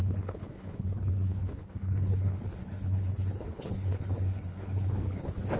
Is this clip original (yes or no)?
no